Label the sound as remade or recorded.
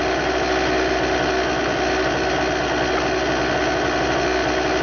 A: recorded